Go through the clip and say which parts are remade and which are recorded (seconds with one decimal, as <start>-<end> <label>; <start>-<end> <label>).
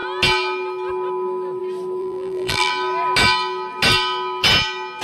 0.0-2.0 recorded; 2.0-2.7 remade; 2.7-5.0 recorded